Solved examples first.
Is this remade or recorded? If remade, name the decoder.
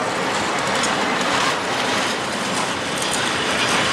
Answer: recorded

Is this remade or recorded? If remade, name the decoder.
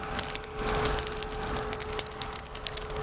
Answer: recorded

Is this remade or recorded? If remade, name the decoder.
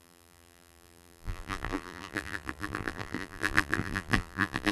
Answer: remade, vocoder, BigVGAN v2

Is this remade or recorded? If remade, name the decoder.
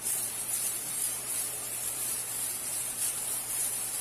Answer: remade, vocoder, BigVGAN v2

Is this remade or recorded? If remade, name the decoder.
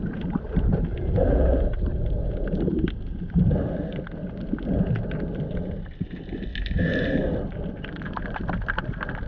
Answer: recorded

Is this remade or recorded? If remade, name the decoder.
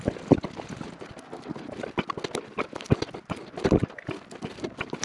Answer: recorded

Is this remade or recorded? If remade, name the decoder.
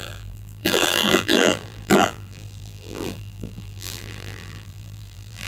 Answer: remade, vocoder, BigVGAN v2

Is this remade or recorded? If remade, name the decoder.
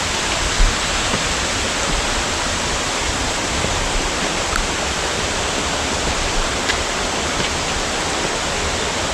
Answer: recorded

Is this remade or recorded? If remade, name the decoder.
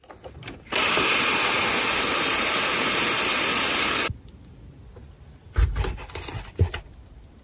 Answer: recorded